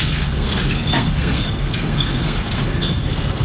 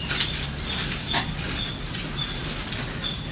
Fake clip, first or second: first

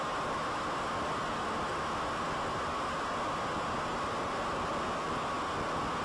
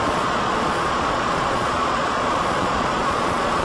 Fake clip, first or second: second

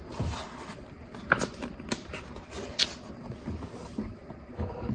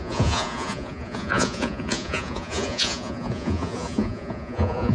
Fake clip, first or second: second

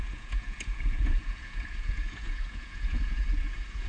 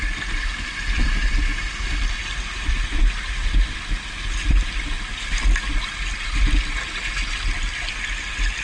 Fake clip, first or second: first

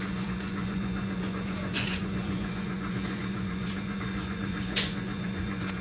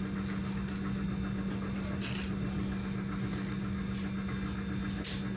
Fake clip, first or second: first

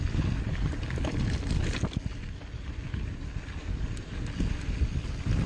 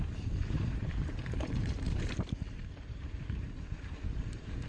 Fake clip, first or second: second